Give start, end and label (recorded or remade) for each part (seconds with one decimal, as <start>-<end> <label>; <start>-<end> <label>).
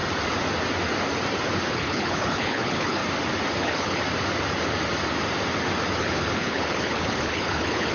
0.0-1.7 recorded; 1.7-3.0 remade; 3.0-3.6 recorded; 3.6-4.0 remade; 4.0-6.0 recorded; 6.0-7.9 remade